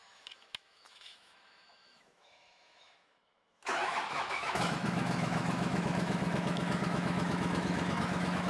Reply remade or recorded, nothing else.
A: remade